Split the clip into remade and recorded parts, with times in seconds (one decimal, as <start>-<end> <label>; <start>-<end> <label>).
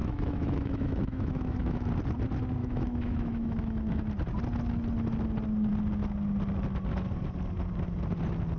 0.0-1.9 remade; 1.9-2.6 recorded; 2.6-4.1 remade; 4.1-8.6 recorded